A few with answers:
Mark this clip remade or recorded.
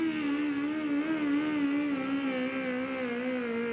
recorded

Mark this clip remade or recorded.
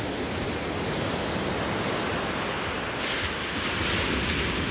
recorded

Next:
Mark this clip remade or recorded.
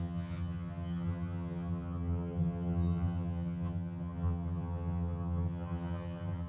remade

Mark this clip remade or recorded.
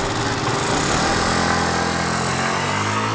recorded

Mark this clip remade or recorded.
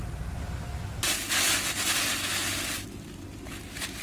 recorded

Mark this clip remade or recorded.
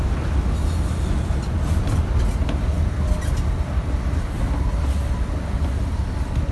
recorded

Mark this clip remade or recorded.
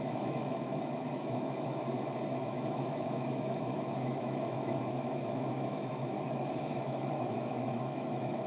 remade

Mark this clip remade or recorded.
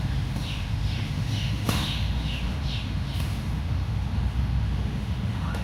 remade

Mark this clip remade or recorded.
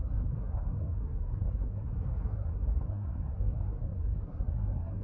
remade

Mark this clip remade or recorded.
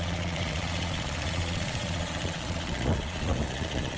remade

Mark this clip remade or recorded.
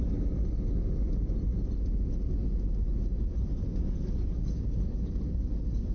recorded